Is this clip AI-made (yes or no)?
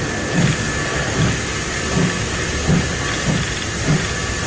no